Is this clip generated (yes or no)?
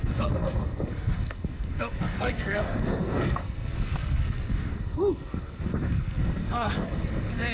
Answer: yes